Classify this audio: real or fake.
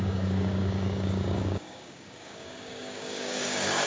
fake